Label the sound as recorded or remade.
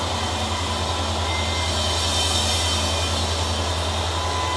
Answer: recorded